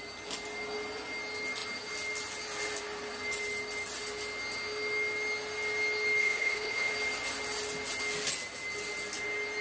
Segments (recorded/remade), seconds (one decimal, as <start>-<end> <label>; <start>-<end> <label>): 0.0-6.2 recorded; 6.2-6.9 remade; 6.9-9.6 recorded